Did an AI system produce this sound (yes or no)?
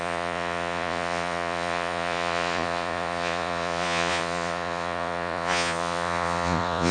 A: yes